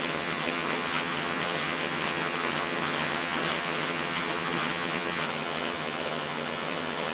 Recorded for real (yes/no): no